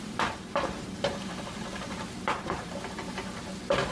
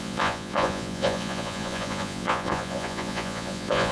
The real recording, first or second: first